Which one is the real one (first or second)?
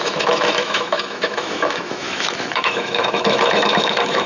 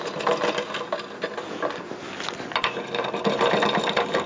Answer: second